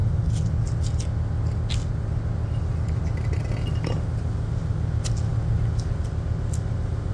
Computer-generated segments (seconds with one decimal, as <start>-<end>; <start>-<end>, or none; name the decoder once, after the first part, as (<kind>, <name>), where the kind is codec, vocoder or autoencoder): none